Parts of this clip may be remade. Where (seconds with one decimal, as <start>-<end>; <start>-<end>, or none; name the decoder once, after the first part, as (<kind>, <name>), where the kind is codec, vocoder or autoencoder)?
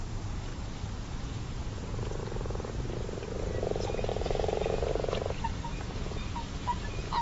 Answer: 0.0-0.5 (vocoder, Vocos); 1.2-2.2; 3.6-7.2